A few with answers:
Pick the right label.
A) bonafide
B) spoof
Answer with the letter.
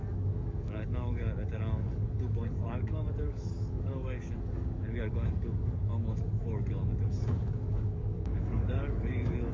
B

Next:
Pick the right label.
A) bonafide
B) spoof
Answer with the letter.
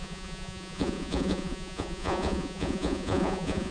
B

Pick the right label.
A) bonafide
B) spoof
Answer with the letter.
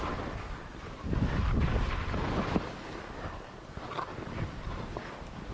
A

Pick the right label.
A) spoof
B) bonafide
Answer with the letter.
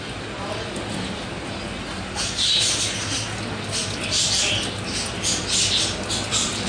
B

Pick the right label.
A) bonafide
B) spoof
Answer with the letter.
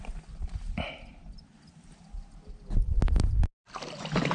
A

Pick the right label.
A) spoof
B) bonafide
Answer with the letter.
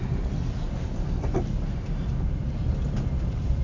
A